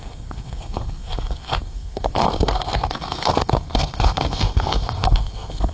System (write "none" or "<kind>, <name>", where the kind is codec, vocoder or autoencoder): codec, SNAC